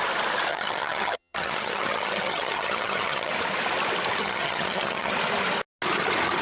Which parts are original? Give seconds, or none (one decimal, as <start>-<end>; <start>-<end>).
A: 0.0-0.5; 3.3-4.2; 5.1-6.4